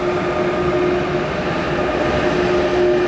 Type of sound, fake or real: real